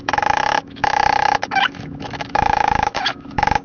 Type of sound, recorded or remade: remade